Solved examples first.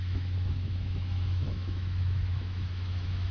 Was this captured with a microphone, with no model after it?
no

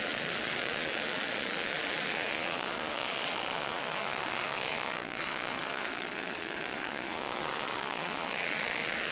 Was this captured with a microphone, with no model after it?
no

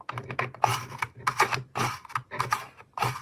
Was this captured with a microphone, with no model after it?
yes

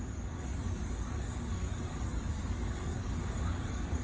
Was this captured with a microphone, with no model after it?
no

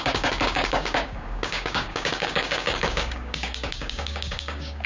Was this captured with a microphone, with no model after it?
no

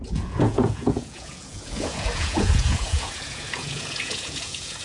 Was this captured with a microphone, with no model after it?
no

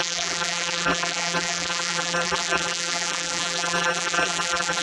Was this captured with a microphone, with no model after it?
no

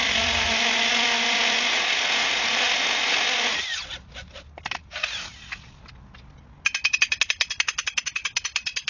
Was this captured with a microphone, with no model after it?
yes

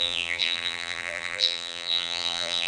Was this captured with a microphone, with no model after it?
no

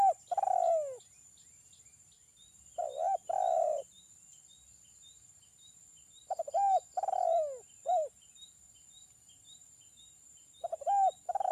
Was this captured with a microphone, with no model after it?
yes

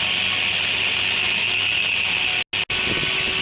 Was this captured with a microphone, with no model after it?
yes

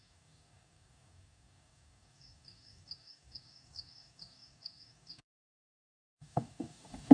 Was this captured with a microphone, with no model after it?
no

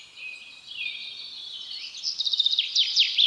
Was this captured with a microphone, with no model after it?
yes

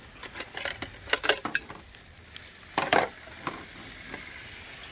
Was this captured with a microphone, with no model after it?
yes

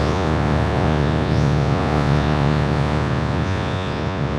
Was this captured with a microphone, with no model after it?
no